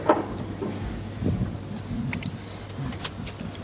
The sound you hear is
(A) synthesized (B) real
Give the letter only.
B